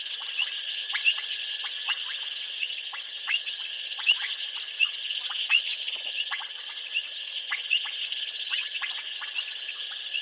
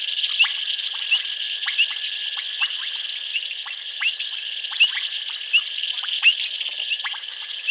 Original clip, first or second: second